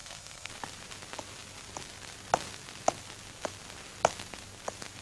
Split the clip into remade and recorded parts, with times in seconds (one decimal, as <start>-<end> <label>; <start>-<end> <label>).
0.0-0.5 remade; 0.5-5.0 recorded